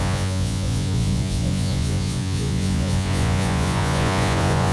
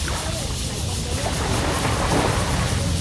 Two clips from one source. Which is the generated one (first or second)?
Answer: first